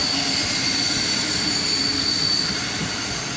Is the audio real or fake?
real